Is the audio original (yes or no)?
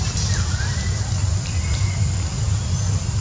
yes